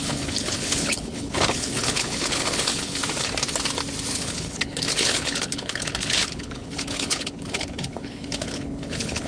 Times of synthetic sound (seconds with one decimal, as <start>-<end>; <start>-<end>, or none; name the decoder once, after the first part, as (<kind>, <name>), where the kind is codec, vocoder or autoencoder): 0.0-3.0 (codec, HILCodec); 4.1-9.3